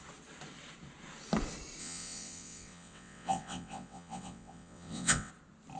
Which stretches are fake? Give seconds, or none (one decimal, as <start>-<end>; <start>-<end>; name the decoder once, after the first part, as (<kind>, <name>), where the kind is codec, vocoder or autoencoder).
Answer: 1.8-5.3 (vocoder, WaveNeXt)